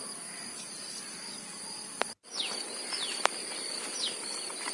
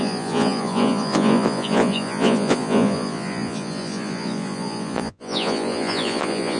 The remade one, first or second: second